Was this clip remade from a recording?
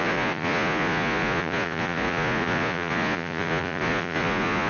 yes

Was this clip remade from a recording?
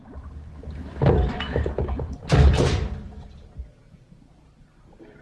yes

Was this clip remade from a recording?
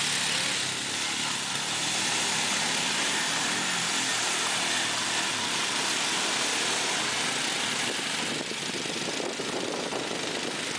no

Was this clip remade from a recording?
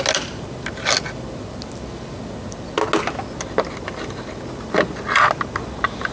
no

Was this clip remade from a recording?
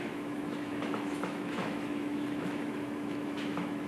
yes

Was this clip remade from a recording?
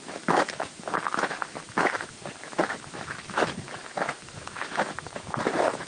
yes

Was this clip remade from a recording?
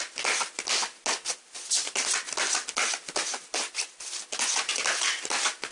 no